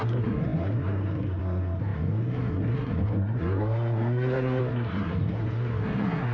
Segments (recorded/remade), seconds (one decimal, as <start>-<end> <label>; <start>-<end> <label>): 0.0-6.3 remade

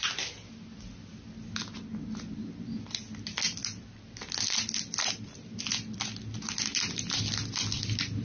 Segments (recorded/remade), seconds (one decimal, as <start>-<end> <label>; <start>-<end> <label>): 0.0-8.2 recorded

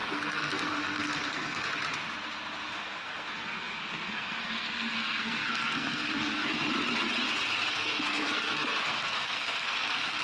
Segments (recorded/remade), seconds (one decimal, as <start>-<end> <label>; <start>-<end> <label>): 0.0-1.7 remade; 1.7-2.7 recorded; 2.7-6.4 remade; 6.4-7.7 recorded; 7.7-10.2 remade

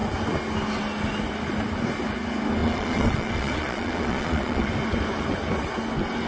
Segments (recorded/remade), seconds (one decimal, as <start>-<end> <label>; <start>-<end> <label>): 0.0-2.6 recorded; 2.6-4.7 remade; 4.7-6.3 recorded

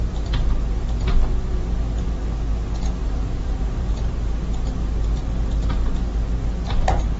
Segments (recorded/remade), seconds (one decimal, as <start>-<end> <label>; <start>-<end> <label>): 0.0-3.0 recorded; 3.0-3.9 remade; 3.9-7.2 recorded

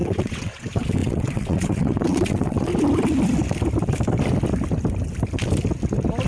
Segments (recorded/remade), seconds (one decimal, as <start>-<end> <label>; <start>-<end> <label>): 0.0-2.7 remade; 2.7-6.3 recorded

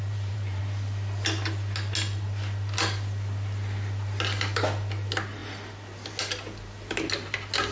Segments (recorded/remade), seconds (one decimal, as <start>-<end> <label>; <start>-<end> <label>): 0.0-0.6 remade; 0.6-7.7 recorded